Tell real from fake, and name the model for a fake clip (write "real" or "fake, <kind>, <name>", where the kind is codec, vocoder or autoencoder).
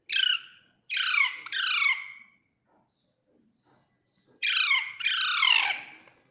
real